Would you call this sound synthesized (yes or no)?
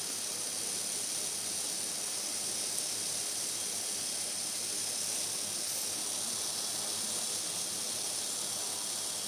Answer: no